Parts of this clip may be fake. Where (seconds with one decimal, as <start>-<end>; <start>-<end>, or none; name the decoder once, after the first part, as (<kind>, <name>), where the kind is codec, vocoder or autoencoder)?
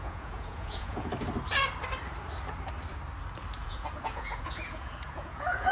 0.0-1.1 (vocoder, Vocos); 3.6-5.7